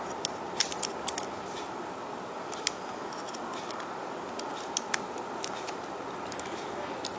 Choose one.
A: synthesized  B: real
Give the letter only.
B